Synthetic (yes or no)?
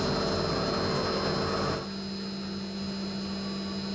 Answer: no